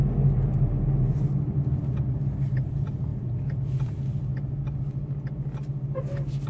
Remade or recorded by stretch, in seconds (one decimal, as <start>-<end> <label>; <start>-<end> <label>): 0.0-6.5 recorded